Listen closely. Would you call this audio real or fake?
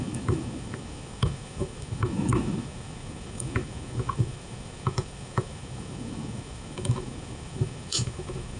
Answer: fake